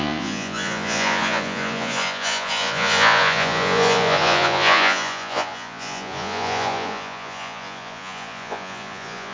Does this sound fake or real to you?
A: fake